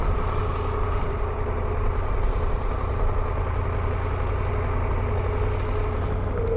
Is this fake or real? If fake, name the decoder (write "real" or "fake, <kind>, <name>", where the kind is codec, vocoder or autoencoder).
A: real